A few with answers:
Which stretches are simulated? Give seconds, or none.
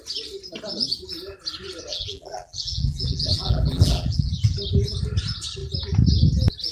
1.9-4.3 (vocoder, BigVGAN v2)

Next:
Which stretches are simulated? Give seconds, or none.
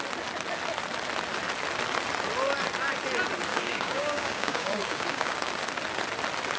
3.5-5.5 (codec, DAC)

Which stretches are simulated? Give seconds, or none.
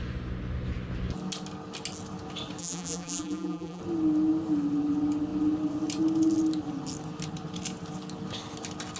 2.6-3.8 (vocoder, BigVGAN v2)